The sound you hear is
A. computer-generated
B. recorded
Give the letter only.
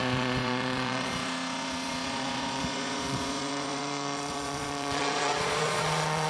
A